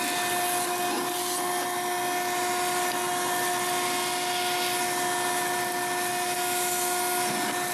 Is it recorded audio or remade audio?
recorded